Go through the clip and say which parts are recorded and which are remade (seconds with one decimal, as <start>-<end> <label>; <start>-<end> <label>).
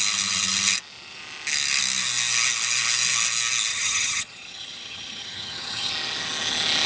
0.0-3.7 recorded; 3.7-5.9 remade; 5.9-6.9 recorded